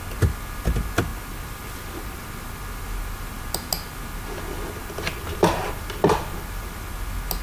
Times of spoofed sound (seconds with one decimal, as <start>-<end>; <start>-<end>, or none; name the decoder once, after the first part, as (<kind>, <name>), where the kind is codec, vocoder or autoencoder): 1.1-2.2 (vocoder, BigVGAN v2); 4.8-6.6